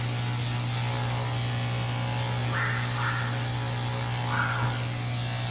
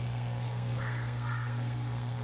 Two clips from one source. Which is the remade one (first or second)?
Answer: second